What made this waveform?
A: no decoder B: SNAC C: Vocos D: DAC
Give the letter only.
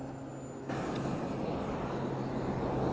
A